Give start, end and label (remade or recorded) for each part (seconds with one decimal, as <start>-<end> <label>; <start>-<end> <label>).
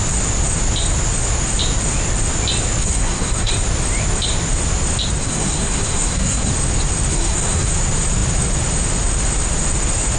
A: 0.0-2.8 recorded; 2.8-3.5 remade; 3.5-5.2 recorded; 5.2-6.5 remade; 6.5-7.1 recorded; 7.1-7.7 remade; 7.7-10.2 recorded